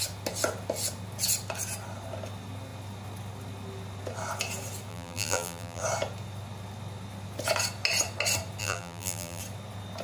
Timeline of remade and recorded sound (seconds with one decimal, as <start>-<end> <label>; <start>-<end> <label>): 0.0-4.9 recorded; 4.9-5.8 remade; 5.8-8.6 recorded; 8.6-9.4 remade; 9.4-10.0 recorded

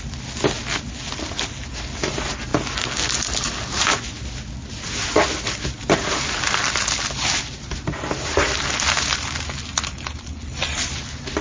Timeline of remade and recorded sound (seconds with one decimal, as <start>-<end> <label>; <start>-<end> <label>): 0.0-11.4 recorded

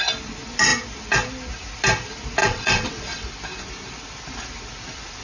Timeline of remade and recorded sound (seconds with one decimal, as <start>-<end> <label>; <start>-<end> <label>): 0.0-2.4 recorded; 2.4-3.3 remade; 3.3-5.2 recorded

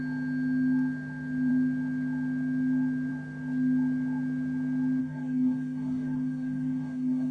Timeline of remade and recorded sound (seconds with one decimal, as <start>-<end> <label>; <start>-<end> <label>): 0.0-5.0 recorded; 5.0-7.3 remade

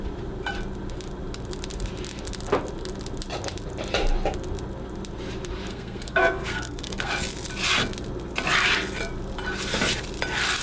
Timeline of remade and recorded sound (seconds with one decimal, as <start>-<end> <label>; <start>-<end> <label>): 0.0-5.7 recorded; 5.7-7.1 remade; 7.1-10.6 recorded

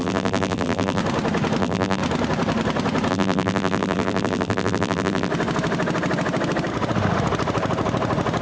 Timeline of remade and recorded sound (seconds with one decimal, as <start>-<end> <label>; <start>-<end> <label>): 0.0-1.0 remade; 1.0-1.6 recorded; 1.6-2.0 remade; 2.0-3.1 recorded; 3.1-5.3 remade; 5.3-8.4 recorded

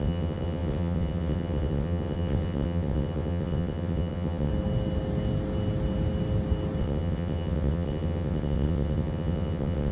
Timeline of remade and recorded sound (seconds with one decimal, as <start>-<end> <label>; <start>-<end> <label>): 0.0-4.5 remade; 4.5-6.8 recorded; 6.8-9.9 remade

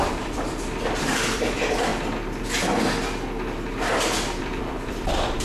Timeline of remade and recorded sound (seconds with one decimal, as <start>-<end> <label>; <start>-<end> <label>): 0.0-1.9 remade; 1.9-4.4 recorded; 4.4-5.4 remade